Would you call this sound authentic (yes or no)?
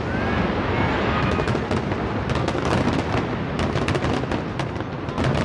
yes